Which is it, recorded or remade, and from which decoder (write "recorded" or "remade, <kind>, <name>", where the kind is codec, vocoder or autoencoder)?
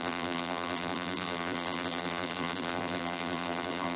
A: remade, vocoder, BigVGAN v2